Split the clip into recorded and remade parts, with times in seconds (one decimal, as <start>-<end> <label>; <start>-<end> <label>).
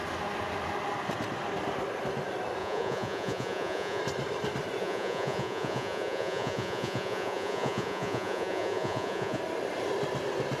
0.0-2.6 recorded; 2.6-4.0 remade; 4.0-4.8 recorded; 4.8-9.4 remade; 9.4-10.6 recorded